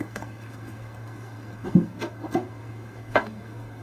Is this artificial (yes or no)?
yes